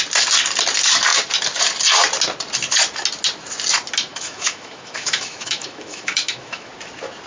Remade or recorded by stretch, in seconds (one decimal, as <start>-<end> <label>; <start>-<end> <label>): 0.0-4.1 recorded; 4.1-6.7 remade; 6.7-7.3 recorded